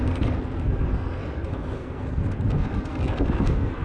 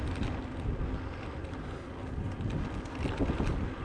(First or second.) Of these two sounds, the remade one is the first